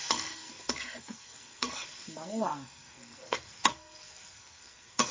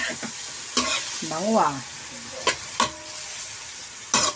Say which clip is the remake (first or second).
first